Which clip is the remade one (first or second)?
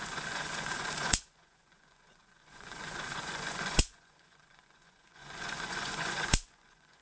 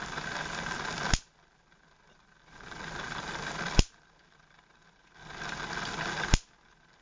first